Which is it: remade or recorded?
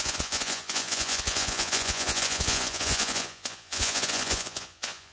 remade